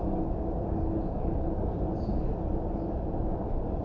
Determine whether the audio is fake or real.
real